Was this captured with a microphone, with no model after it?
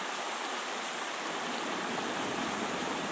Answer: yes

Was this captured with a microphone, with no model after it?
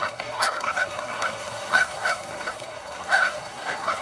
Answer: no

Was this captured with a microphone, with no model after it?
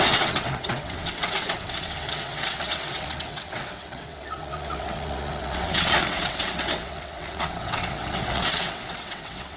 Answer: no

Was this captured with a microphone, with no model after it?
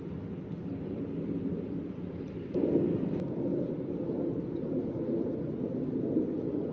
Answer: yes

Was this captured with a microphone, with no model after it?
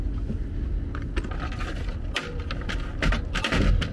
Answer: yes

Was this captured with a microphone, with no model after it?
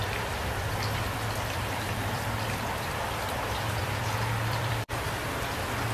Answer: no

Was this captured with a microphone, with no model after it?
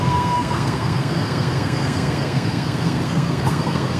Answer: no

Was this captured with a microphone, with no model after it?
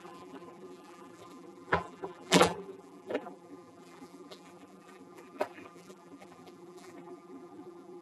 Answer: no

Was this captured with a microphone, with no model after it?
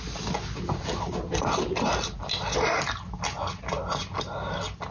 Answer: yes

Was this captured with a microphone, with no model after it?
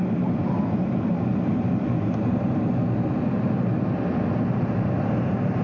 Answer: yes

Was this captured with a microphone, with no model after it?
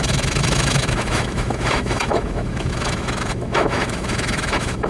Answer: no